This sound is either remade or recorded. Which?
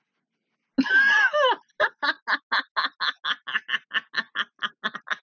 recorded